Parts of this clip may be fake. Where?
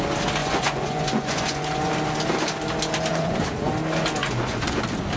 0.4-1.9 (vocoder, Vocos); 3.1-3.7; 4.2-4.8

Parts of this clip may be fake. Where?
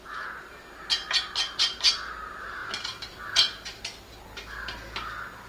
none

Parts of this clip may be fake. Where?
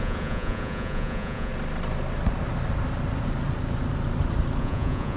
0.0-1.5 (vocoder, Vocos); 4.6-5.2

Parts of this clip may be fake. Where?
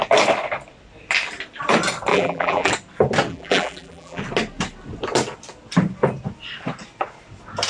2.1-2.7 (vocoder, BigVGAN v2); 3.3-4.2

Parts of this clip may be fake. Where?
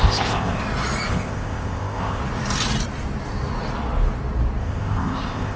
0.0-0.6 (codec, ZipCodec); 1.1-2.2; 4.6-5.6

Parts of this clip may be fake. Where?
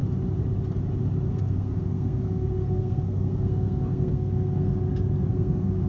1.3-4.7 (codec, SNAC); 5.3-5.9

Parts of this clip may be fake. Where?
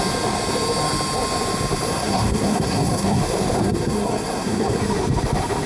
1.9-3.2 (codec, SNAC); 3.6-4.8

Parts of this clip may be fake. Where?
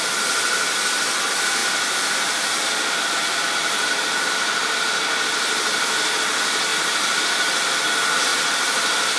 1.6-4.3 (vocoder, BigVGAN v2)